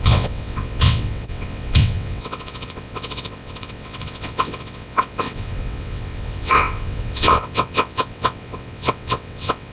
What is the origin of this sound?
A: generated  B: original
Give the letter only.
A